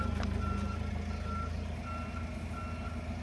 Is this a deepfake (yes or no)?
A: no